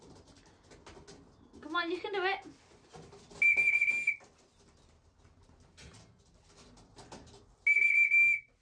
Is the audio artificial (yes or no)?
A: no